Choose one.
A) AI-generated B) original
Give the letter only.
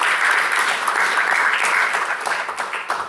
B